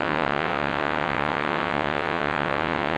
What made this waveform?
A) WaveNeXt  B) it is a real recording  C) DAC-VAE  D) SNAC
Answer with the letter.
A